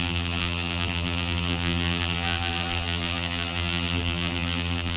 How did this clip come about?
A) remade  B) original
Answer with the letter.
A